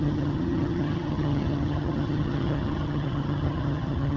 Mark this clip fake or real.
fake